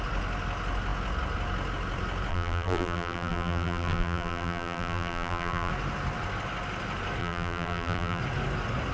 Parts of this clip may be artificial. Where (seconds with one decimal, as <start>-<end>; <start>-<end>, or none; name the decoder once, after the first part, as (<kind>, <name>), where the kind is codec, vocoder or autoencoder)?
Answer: 2.3-5.7 (vocoder, BigVGAN v2); 7.2-8.2